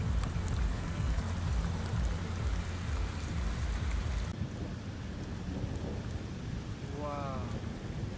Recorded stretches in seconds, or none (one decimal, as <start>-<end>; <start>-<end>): 0.0-0.7; 1.2-8.2